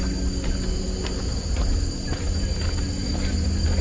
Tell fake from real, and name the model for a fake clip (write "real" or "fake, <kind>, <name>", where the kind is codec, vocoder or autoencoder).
real